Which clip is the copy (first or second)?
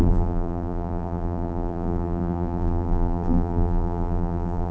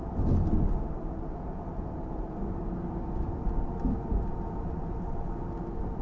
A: first